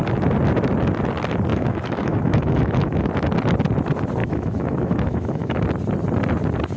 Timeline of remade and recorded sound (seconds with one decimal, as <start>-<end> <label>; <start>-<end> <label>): 0.0-1.5 recorded; 1.5-3.1 remade; 3.1-4.2 recorded; 4.2-5.6 remade; 5.6-6.8 recorded

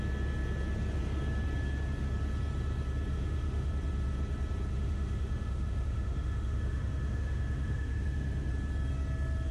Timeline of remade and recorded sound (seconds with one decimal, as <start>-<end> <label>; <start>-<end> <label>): 0.0-3.1 recorded; 3.1-3.7 remade; 3.7-4.7 recorded; 4.7-8.5 remade; 8.5-9.5 recorded

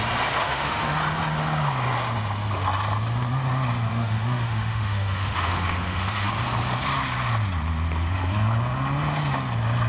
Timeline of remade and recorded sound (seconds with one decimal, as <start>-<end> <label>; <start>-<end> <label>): 0.0-0.4 recorded; 0.4-1.0 remade; 1.0-3.9 recorded; 3.9-6.3 remade; 6.3-9.9 recorded